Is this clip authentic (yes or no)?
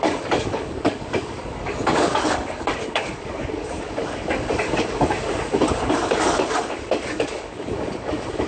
no